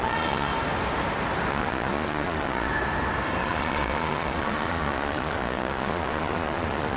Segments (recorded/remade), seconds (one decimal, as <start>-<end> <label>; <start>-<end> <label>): 0.0-0.5 remade; 0.5-1.5 recorded; 1.5-2.7 remade; 2.7-3.4 recorded; 3.4-7.0 remade